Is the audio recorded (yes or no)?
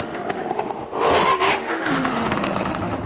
no